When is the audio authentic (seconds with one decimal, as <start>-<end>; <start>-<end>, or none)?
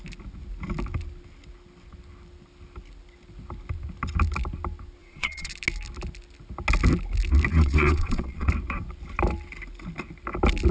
0.0-5.0; 5.5-7.5; 8.5-10.7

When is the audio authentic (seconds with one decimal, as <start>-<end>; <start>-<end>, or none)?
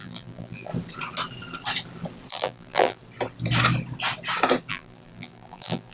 0.7-2.3; 3.0-4.7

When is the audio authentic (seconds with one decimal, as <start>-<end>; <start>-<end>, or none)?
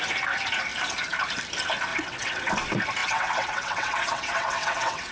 0.0-1.9; 2.5-3.0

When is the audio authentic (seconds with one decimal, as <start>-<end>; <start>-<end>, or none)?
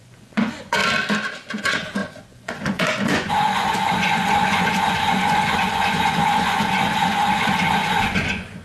0.8-1.6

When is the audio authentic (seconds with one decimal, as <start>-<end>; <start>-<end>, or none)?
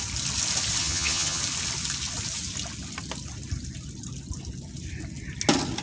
0.0-0.8; 1.4-5.8